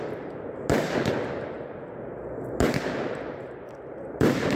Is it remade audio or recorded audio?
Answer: recorded